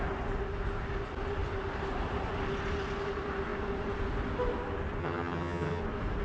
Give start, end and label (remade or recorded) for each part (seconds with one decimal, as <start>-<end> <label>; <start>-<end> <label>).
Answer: 0.0-5.0 recorded; 5.0-5.8 remade; 5.8-6.2 recorded